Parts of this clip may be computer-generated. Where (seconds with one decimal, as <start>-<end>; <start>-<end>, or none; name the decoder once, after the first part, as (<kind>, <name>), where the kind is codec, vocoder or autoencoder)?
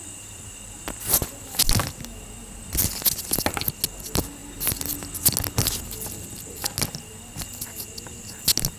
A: none